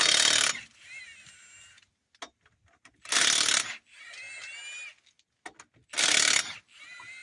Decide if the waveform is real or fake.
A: real